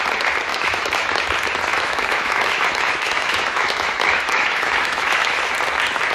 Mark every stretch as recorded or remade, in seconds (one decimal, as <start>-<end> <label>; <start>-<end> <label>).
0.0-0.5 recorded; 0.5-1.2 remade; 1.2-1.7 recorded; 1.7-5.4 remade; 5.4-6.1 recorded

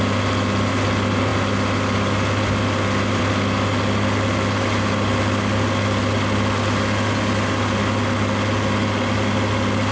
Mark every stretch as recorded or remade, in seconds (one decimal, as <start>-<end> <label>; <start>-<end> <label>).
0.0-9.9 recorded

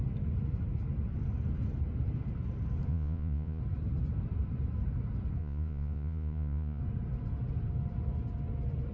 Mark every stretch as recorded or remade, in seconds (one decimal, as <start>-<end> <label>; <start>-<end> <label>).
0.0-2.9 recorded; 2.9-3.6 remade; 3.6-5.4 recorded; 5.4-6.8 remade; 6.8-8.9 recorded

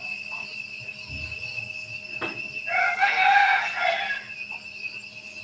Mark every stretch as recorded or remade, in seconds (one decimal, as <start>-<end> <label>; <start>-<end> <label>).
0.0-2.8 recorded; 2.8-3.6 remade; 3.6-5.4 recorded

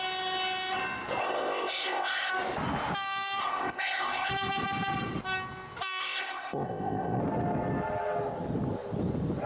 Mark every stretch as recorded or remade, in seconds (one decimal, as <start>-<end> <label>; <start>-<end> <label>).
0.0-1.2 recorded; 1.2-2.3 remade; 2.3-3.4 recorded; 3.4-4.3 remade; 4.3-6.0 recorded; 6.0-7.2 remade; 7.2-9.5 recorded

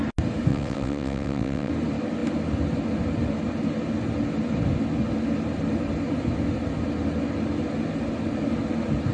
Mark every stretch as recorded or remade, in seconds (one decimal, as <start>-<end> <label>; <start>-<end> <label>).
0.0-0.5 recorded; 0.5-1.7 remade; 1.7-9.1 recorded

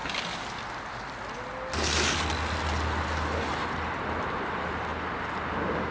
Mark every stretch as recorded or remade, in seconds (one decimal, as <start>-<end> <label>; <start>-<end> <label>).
0.0-5.9 recorded